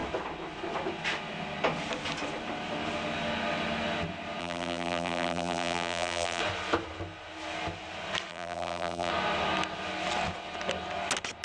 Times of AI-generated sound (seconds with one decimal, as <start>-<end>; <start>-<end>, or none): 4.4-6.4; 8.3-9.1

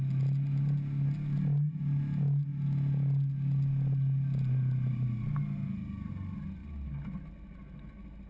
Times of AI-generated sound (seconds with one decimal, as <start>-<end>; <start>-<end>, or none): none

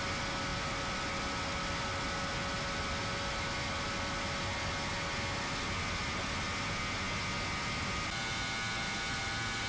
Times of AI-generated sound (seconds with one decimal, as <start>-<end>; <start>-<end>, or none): none

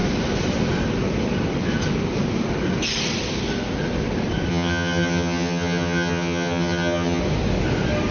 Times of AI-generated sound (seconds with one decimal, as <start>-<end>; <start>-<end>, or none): 4.5-7.2

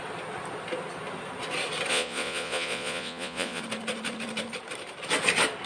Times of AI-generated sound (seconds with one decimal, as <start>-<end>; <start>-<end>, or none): 1.9-3.6

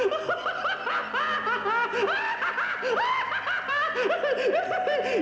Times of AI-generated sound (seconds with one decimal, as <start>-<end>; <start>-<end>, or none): none

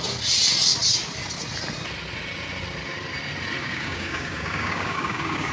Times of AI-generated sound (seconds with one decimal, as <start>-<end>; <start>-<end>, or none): 3.6-5.5

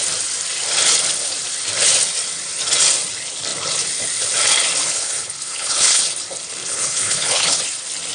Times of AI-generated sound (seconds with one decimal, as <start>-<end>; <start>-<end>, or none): 4.8-6.1; 6.6-7.6